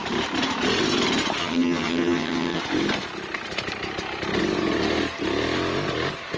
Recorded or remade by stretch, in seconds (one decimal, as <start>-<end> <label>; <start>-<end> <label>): 0.0-1.4 recorded; 1.4-2.6 remade; 2.6-6.4 recorded